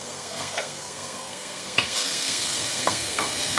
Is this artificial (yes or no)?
yes